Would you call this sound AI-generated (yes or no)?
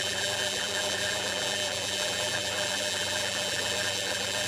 yes